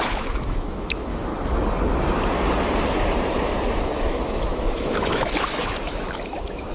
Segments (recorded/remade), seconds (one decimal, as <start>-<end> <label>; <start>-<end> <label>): 0.0-1.3 remade; 1.3-3.8 recorded; 3.8-6.7 remade